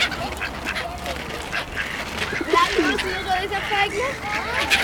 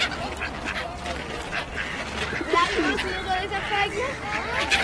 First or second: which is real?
second